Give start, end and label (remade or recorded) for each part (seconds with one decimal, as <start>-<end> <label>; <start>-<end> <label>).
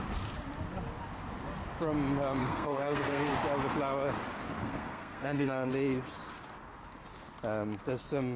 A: 0.0-2.4 recorded; 2.4-3.3 remade; 3.3-4.6 recorded; 4.6-5.7 remade; 5.7-8.4 recorded